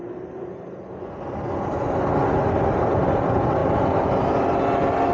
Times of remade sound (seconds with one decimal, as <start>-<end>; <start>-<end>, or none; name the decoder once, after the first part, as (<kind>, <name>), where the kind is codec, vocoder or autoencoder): none